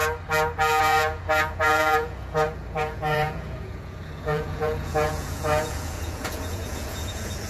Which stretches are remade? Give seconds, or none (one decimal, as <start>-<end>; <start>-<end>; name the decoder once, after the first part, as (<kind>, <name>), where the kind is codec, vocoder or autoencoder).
0.8-7.5 (vocoder, Vocos)